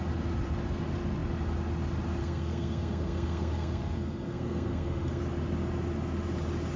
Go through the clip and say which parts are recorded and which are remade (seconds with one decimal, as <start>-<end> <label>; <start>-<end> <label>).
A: 0.0-2.2 recorded; 2.2-5.2 remade; 5.2-6.8 recorded